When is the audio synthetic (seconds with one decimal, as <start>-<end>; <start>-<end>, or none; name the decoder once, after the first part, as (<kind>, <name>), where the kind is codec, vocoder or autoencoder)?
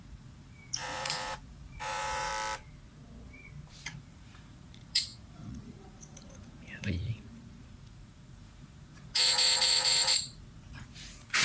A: 0.0-2.3 (vocoder, Vocos); 3.7-11.4